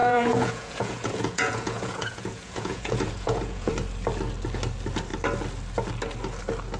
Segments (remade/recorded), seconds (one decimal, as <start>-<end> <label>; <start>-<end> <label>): 0.0-3.7 remade; 3.7-6.8 recorded